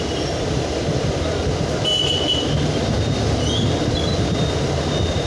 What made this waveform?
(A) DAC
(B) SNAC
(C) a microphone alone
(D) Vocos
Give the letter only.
C